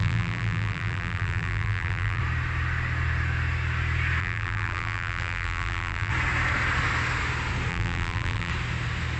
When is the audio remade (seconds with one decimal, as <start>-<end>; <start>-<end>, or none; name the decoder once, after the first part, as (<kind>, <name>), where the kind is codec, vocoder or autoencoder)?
0.0-2.2 (vocoder, BigVGAN v2); 4.2-6.1; 7.7-8.5